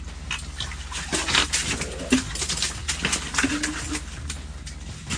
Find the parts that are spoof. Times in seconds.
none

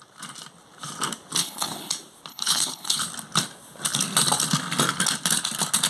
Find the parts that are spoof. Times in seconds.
1.4-1.9 (codec, HILCodec); 2.3-3.0

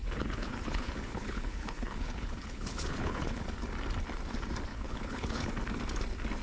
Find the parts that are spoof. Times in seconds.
0.0-3.4 (codec, HILCodec); 4.7-5.5

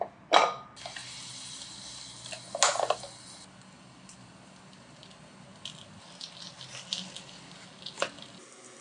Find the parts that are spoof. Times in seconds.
none

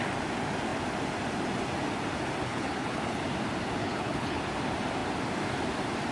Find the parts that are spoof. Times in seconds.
2.4-3.2 (codec, HILCodec); 3.8-4.4

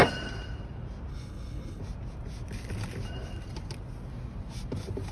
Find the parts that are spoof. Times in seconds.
1.1-1.8 (codec, HILCodec)